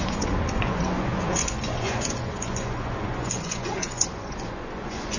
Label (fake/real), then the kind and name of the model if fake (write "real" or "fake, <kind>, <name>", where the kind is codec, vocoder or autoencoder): fake, vocoder, Vocos